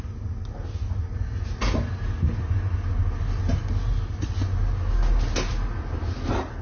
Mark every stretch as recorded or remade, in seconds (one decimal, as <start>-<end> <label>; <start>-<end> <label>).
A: 0.0-6.6 recorded

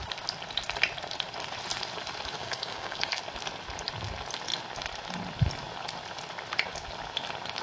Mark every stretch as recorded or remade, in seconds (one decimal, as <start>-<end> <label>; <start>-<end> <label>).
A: 0.0-2.4 recorded; 2.4-3.2 remade; 3.2-7.6 recorded

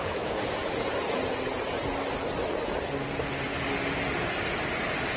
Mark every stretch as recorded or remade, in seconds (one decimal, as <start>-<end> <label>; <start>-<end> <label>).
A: 0.0-1.8 remade; 1.8-5.2 recorded

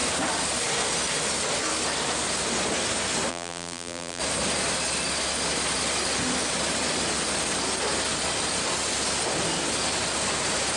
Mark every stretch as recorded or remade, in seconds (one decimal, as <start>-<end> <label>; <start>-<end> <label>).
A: 0.0-3.3 recorded; 3.3-4.2 remade; 4.2-10.8 recorded

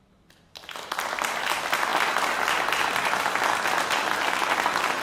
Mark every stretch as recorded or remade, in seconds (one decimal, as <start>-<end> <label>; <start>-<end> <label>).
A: 0.0-5.0 recorded